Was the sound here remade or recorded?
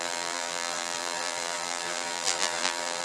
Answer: remade